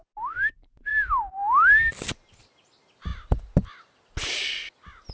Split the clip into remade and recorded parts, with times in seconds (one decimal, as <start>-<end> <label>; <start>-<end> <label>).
0.0-5.1 recorded